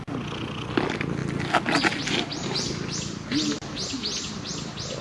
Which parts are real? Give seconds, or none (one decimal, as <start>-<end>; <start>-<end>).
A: 0.0-5.0